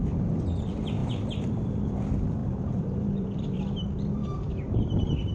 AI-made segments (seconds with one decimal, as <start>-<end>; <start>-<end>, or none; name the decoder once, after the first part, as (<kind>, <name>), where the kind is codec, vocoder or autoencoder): 1.0-1.7 (vocoder, BigVGAN v2); 2.4-3.6; 4.2-5.3